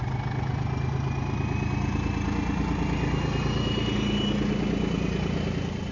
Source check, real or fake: real